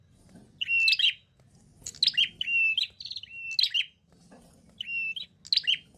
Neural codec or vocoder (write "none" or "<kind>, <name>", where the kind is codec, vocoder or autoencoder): none